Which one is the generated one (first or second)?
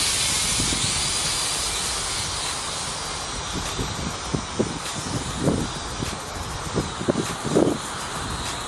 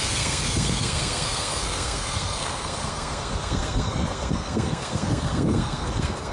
second